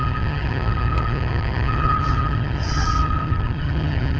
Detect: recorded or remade remade